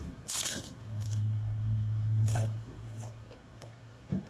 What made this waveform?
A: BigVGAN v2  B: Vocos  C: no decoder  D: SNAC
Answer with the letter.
D